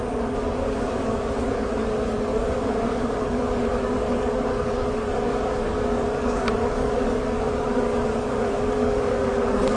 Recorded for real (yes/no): no